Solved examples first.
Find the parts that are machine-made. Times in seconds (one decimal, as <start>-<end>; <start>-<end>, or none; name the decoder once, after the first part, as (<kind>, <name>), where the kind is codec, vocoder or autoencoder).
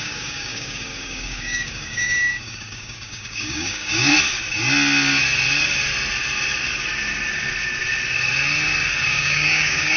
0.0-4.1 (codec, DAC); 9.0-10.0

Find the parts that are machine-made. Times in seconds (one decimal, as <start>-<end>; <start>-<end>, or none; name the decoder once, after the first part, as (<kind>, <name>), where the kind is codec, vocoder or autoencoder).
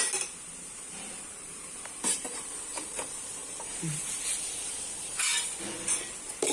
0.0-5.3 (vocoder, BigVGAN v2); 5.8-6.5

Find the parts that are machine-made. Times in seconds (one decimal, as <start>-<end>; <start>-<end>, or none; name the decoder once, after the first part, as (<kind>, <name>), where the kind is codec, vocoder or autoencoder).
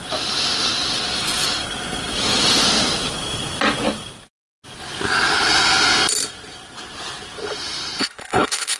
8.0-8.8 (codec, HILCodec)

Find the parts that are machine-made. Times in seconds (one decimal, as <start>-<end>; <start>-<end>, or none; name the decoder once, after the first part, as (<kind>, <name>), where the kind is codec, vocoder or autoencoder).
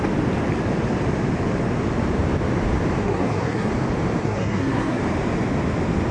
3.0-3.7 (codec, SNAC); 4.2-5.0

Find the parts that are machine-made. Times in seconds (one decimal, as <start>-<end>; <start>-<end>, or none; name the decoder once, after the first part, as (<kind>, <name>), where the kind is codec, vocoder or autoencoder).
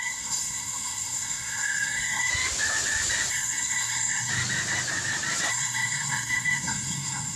0.0-2.3 (codec, SNAC); 3.3-4.3; 5.5-7.4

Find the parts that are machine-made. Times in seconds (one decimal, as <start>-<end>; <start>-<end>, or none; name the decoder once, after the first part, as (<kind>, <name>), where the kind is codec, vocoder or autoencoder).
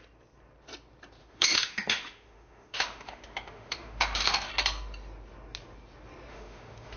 1.2-4.5 (autoencoder, DAC-VAE); 6.3-7.0